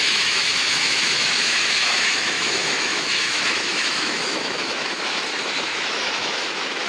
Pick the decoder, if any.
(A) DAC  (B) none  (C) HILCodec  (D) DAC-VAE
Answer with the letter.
D